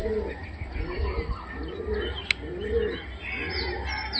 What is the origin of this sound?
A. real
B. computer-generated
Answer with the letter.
A